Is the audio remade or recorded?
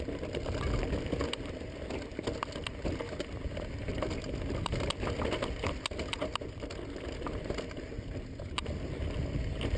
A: recorded